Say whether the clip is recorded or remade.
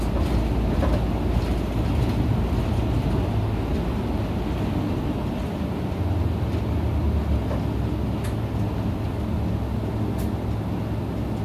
recorded